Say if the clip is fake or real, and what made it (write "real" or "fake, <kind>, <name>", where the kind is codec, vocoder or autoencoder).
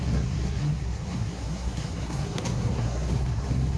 fake, codec, SNAC